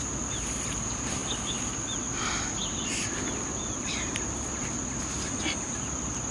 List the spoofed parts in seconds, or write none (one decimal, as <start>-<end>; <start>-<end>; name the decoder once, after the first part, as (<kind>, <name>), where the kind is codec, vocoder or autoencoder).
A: none